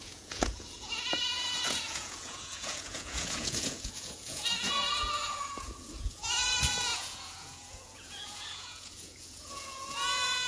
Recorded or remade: remade